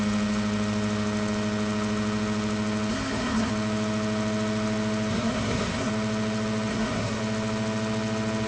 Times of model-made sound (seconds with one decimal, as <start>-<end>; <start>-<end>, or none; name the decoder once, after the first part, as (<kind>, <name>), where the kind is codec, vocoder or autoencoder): 2.9-3.5 (codec, SNAC); 5.1-5.9; 6.7-7.2